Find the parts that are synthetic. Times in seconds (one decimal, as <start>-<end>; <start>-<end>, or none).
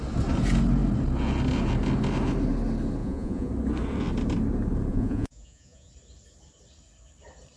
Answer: 3.0-3.5; 4.9-5.9